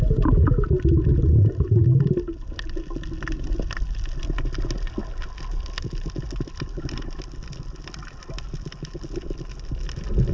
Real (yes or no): yes